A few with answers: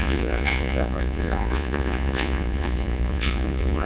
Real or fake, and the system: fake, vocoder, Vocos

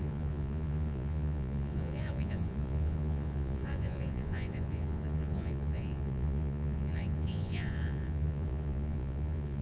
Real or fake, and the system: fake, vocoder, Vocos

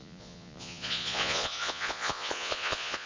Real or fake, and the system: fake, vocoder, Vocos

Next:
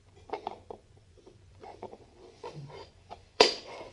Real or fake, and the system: fake, vocoder, Vocos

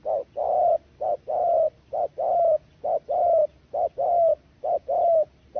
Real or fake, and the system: real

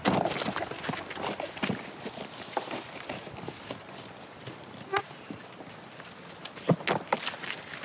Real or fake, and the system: real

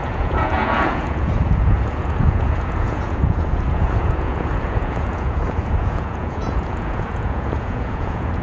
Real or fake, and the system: fake, vocoder, Vocos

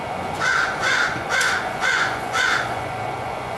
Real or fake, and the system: fake, vocoder, Vocos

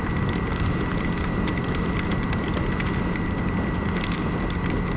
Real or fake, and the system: real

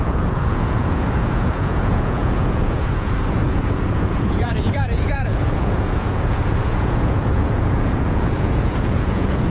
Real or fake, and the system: fake, vocoder, Vocos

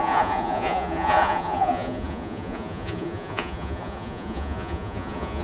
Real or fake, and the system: fake, vocoder, Vocos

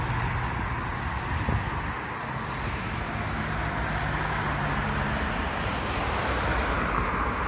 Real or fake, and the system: real